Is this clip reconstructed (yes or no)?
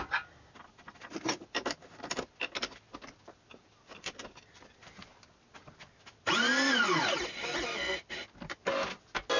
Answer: no